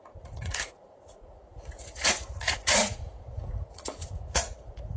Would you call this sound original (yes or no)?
no